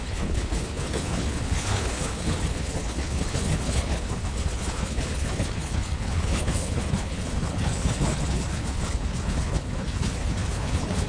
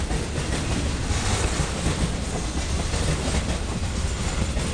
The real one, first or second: second